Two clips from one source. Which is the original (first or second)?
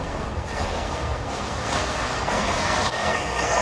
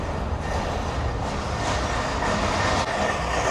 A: second